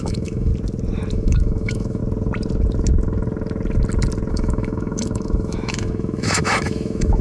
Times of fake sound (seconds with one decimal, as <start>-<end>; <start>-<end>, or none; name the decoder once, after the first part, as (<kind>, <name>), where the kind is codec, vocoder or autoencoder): 0.0-0.5 (autoencoder, DAC-VAE); 1.1-2.0; 4.3-7.2